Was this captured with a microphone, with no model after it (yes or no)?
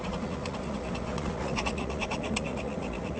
no